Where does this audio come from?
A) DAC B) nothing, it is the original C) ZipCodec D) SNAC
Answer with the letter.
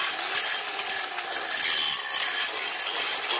B